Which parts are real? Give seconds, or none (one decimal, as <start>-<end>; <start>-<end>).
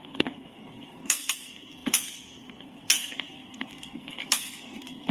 none